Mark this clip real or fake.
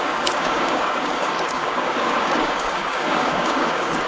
fake